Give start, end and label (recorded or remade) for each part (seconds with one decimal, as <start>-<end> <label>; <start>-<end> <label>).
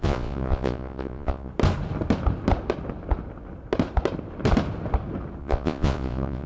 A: 0.0-1.5 remade; 1.5-5.4 recorded; 5.4-6.5 remade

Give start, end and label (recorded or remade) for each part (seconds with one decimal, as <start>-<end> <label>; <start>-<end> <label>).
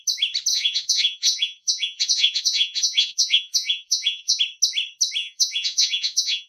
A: 0.0-0.5 recorded; 0.5-4.4 remade; 4.4-5.2 recorded; 5.2-6.5 remade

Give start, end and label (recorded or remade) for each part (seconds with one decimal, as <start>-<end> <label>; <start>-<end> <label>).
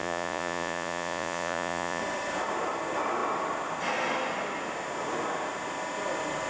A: 0.0-2.0 remade; 2.0-6.5 recorded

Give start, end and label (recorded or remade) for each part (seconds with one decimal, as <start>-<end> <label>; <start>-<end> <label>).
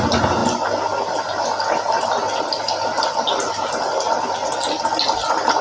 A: 0.0-5.6 recorded